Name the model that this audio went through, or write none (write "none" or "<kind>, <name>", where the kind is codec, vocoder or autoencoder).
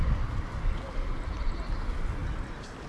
none